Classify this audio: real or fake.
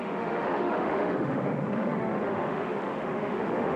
fake